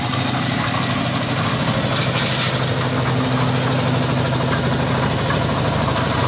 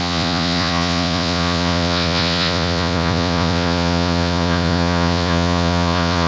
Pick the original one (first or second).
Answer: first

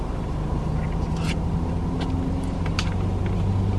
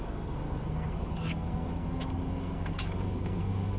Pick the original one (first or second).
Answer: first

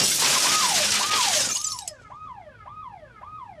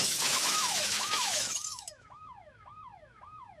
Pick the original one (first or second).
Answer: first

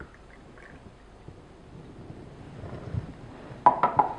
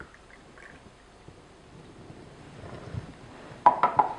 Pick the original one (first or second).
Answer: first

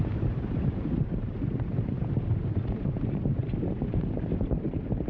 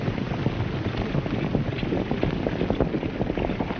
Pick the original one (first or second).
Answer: second